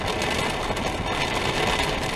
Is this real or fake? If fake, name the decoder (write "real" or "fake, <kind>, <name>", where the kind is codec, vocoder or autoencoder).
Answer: real